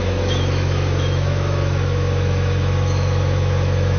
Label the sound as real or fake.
fake